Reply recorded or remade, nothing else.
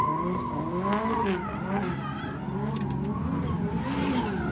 recorded